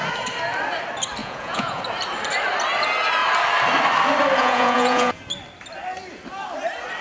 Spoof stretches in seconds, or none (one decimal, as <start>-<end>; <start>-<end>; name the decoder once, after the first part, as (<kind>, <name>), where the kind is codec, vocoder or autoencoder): 1.2-1.8 (vocoder, Vocos); 4.4-5.2